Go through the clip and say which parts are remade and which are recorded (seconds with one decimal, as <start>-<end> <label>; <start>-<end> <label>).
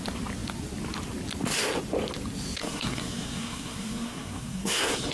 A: 0.0-2.6 recorded; 2.6-5.1 remade